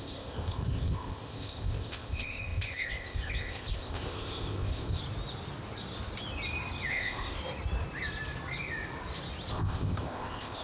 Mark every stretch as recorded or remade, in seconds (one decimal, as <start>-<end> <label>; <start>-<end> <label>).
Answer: 0.0-5.0 remade; 5.0-6.9 recorded; 6.9-7.4 remade; 7.4-9.5 recorded; 9.5-10.6 remade